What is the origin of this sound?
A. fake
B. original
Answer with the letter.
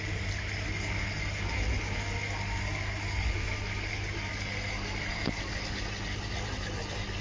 B